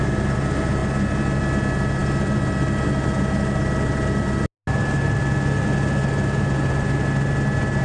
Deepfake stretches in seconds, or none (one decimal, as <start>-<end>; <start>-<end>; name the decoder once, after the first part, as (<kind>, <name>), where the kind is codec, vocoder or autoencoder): none